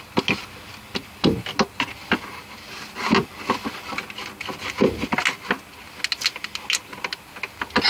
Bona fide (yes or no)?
yes